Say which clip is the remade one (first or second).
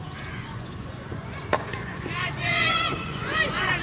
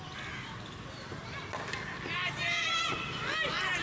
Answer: first